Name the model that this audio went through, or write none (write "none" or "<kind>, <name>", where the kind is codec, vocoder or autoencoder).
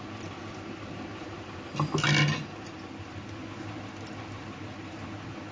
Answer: none